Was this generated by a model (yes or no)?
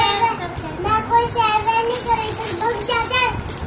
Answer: no